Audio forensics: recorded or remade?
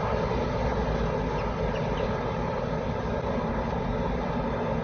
recorded